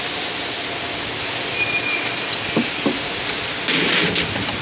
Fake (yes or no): no